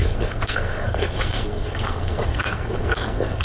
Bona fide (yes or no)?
no